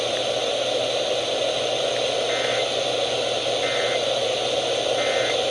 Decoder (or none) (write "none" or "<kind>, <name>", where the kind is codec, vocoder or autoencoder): none